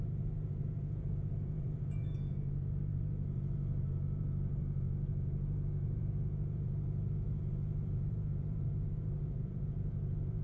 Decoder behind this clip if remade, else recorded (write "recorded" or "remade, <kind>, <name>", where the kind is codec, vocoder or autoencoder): remade, vocoder, Vocos